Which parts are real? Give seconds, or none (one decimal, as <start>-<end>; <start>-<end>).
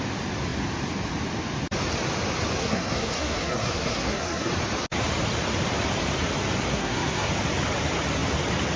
0.0-2.6; 4.5-6.7; 7.3-8.8